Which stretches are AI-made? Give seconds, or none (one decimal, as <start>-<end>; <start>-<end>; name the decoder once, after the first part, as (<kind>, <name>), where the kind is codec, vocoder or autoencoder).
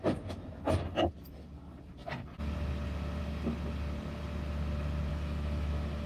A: 5.1-6.1 (autoencoder, DAC-VAE)